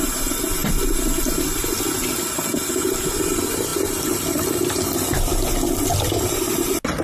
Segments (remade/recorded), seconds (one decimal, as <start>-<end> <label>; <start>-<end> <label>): 0.0-7.0 recorded